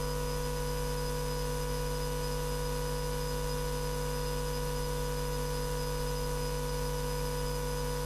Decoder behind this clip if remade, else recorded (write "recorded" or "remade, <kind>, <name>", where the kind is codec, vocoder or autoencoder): recorded